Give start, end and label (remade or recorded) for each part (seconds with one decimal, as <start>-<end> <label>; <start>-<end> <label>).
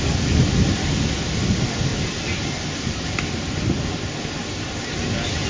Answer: 0.0-5.5 recorded